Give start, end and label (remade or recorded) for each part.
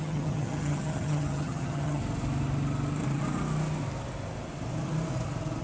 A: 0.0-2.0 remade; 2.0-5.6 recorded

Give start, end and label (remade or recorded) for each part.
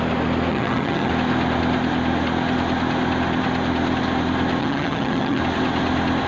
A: 0.0-0.5 recorded; 0.5-1.1 remade; 1.1-4.6 recorded; 4.6-5.4 remade; 5.4-6.3 recorded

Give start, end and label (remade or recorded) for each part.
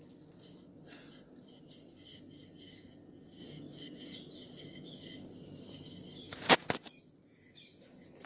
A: 0.0-8.3 recorded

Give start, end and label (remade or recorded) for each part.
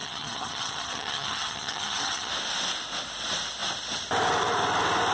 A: 0.0-2.3 remade; 2.3-5.1 recorded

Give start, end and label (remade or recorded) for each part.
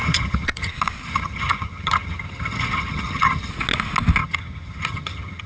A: 0.0-0.7 remade; 0.7-1.1 recorded; 1.1-3.5 remade; 3.5-4.2 recorded; 4.2-5.5 remade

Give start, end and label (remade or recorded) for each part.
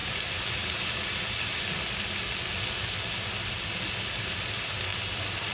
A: 0.0-5.5 recorded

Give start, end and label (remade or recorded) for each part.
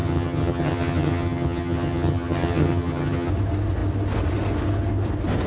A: 0.0-3.3 remade; 3.3-5.5 recorded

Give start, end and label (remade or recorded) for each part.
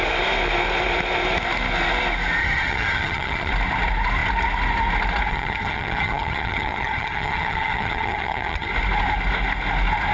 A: 0.0-2.4 recorded; 2.4-3.5 remade; 3.5-5.3 recorded; 5.3-8.7 remade; 8.7-10.1 recorded